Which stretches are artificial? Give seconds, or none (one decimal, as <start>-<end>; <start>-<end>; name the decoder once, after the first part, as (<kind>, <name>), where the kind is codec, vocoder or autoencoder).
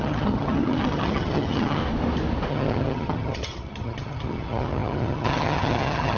0.0-1.8 (vocoder, HiFi-GAN); 2.5-6.2